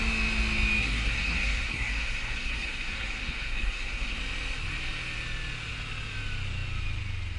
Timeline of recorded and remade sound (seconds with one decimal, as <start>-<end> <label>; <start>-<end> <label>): 0.0-0.8 recorded; 0.8-4.2 remade; 4.2-7.4 recorded